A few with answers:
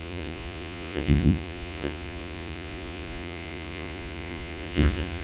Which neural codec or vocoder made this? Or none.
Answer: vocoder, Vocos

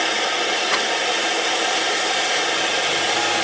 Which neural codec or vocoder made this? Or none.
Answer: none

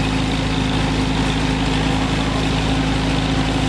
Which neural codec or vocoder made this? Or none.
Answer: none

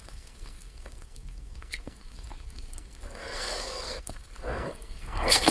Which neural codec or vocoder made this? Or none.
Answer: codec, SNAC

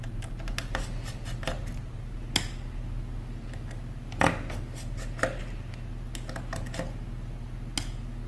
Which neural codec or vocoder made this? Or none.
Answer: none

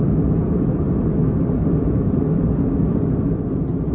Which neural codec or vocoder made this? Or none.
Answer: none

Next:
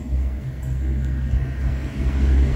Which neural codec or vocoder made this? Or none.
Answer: codec, SNAC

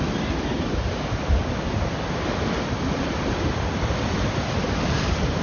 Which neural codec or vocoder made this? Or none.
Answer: none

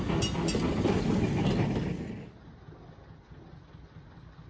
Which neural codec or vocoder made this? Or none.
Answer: none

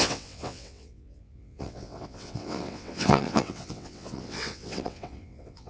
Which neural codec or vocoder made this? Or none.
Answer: vocoder, WaveNeXt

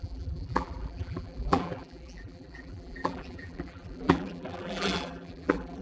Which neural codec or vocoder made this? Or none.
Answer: vocoder, BigVGAN v2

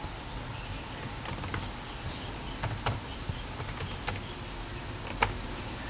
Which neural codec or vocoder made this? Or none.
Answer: none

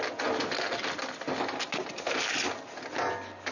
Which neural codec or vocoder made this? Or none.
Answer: none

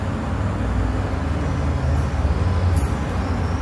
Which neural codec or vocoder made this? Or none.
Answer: none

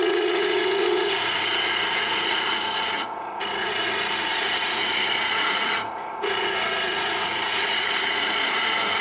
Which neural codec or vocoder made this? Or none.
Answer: vocoder, Vocos